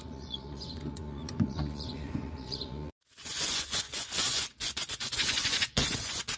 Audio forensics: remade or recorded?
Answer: remade